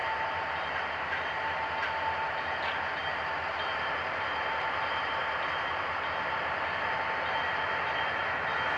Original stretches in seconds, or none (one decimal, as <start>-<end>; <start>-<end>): 2.6-3.0; 8.2-8.8